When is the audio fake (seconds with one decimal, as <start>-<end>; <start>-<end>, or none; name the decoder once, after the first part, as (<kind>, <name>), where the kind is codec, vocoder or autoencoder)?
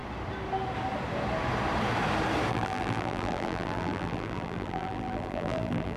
2.5-6.0 (vocoder, BigVGAN v2)